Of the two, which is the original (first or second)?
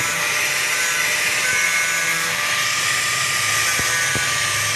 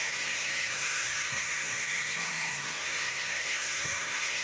first